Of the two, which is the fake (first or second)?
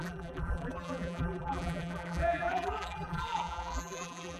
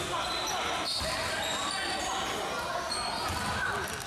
first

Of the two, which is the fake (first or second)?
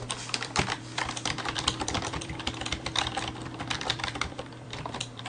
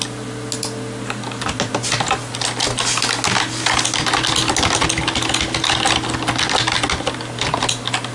first